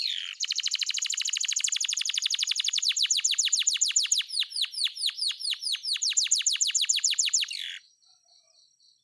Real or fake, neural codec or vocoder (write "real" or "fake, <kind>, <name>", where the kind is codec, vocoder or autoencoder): fake, vocoder, BigVGAN v2